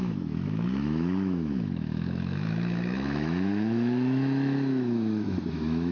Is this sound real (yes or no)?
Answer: no